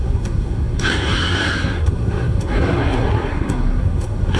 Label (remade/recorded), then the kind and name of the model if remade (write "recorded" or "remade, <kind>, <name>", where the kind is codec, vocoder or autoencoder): remade, codec, SNAC